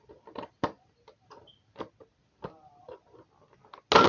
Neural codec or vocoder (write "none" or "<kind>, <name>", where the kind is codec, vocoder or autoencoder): none